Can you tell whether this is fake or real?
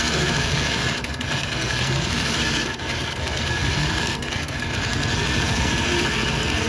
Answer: fake